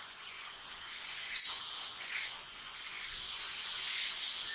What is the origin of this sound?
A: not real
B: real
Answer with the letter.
A